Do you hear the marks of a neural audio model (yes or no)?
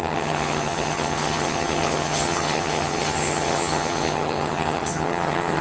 yes